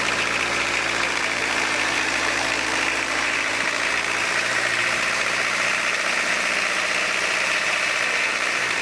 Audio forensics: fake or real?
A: fake